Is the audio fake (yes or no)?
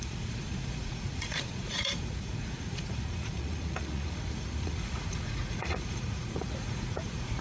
yes